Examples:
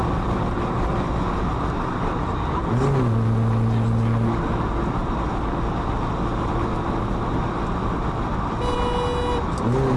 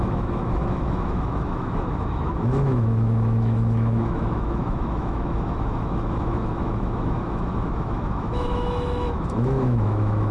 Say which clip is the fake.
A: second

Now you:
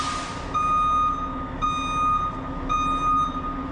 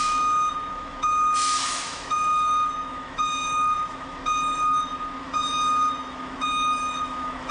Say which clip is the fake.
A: second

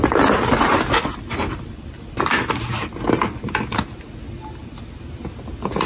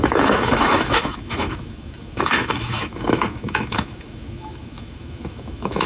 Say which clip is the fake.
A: second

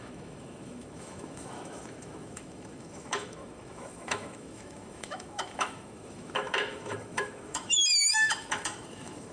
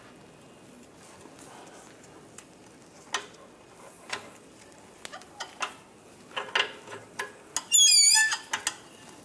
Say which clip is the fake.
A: first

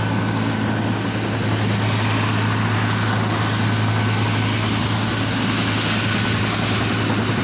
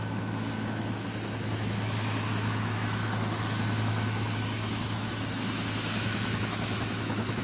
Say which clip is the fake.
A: second